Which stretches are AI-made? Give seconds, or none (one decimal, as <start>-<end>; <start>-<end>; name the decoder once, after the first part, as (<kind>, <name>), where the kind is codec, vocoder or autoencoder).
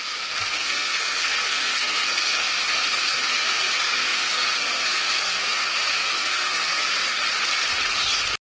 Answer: 0.0-7.2 (codec, SNAC)